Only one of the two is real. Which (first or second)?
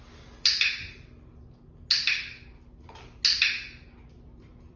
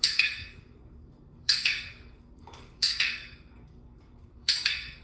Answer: first